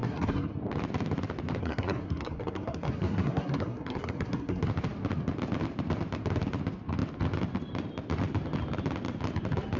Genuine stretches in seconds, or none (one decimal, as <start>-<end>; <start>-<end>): 0.6-1.6; 4.6-9.8